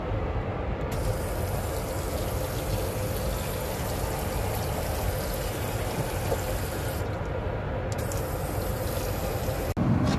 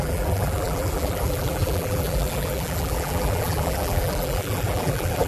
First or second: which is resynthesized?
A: second